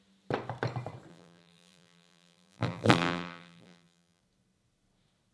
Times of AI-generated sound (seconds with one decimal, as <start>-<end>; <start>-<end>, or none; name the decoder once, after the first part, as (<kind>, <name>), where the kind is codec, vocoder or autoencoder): 1.1-4.2 (vocoder, BigVGAN v2)